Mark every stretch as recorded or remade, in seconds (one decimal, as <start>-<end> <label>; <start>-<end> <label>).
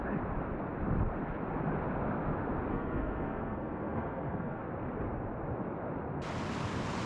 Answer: 0.0-2.7 recorded; 2.7-4.6 remade; 4.6-7.1 recorded